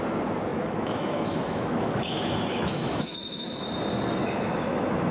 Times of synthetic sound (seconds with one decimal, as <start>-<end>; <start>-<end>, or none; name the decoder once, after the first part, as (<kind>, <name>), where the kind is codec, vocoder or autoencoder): 0.5-3.6 (autoencoder, DAC-VAE); 4.2-5.1